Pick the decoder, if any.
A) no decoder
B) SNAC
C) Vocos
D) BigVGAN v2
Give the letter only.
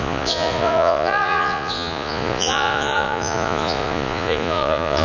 C